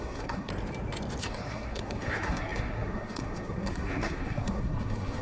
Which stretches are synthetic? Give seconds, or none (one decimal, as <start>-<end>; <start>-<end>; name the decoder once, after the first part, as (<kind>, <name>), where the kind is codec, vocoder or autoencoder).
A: 0.0-0.5 (codec, SNAC); 1.2-5.2